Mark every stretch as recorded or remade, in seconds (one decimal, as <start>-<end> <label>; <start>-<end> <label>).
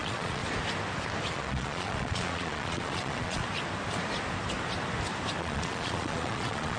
0.0-0.4 remade; 0.4-1.3 recorded; 1.3-3.4 remade; 3.4-5.4 recorded; 5.4-6.8 remade